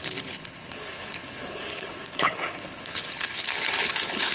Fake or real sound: fake